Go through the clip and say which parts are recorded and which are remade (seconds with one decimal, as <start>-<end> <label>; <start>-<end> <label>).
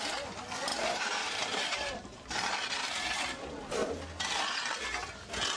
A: 0.0-0.7 recorded; 0.7-2.5 remade; 2.5-5.6 recorded